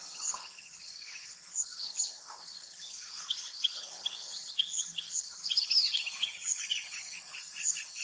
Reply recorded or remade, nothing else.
remade